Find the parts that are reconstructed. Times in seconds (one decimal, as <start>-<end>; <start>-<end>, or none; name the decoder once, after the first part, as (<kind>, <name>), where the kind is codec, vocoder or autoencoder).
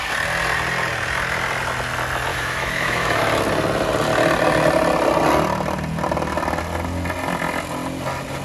2.3-3.2 (autoencoder, DAC-VAE)